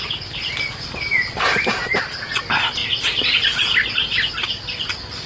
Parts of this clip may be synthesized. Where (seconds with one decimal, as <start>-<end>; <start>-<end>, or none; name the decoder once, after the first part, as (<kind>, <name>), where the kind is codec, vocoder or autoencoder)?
2.8-4.3 (vocoder, BigVGAN v2)